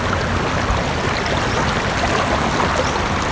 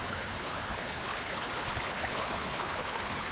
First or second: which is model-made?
second